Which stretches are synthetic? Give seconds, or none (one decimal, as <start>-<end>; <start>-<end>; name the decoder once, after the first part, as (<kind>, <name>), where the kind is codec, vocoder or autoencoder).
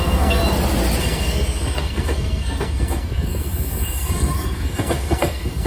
0.0-0.4 (codec, SNAC); 1.0-5.7